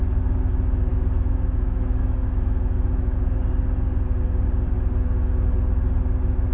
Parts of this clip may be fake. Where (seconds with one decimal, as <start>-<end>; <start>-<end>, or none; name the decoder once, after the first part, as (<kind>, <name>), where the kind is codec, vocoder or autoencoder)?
0.9-3.4 (autoencoder, DAC-VAE)